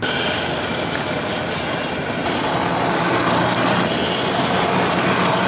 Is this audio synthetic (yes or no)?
no